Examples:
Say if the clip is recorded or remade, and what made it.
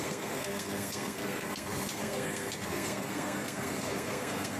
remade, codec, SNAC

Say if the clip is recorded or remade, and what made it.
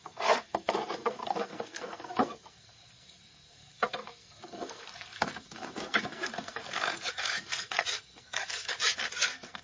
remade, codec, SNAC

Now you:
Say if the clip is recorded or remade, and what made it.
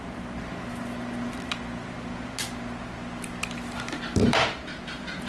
recorded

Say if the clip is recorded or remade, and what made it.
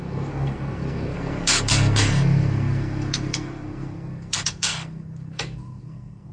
remade, codec, SNAC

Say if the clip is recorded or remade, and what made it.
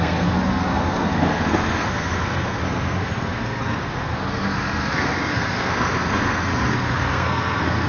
remade, codec, SNAC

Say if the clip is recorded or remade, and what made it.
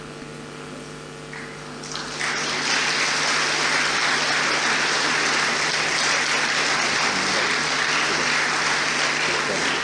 recorded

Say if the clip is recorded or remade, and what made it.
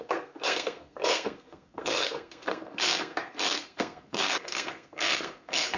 remade, codec, SNAC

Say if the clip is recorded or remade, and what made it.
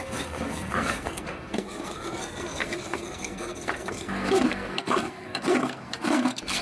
remade, codec, SNAC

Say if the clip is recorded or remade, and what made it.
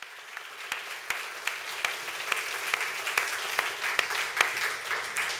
recorded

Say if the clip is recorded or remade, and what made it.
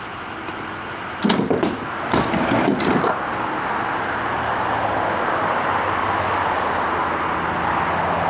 recorded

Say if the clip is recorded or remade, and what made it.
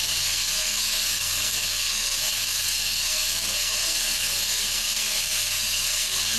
remade, codec, SNAC